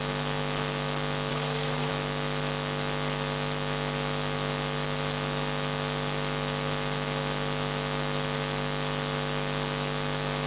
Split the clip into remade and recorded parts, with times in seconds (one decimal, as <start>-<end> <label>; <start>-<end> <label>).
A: 0.0-1.3 recorded; 1.3-1.9 remade; 1.9-10.5 recorded